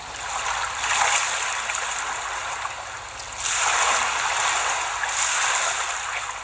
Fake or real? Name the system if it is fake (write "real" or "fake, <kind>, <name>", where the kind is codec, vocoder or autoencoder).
real